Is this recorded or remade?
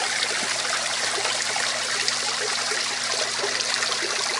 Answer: remade